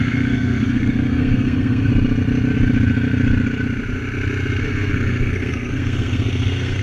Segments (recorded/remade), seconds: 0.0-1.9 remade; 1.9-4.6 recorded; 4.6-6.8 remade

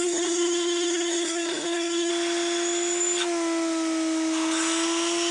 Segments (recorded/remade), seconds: 0.0-2.1 remade; 2.1-5.3 recorded

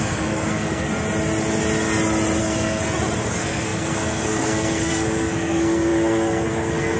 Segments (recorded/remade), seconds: 0.0-0.9 remade; 0.9-2.4 recorded; 2.4-2.8 remade; 2.8-3.3 recorded; 3.3-7.0 remade